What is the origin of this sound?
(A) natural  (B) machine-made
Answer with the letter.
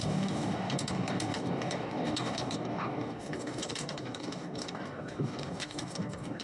B